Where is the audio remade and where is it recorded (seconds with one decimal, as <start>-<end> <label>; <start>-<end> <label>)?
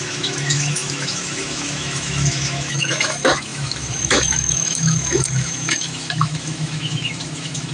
0.0-7.7 remade